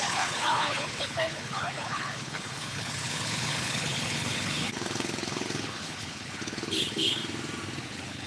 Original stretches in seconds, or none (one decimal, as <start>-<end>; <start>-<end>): 7.2-7.8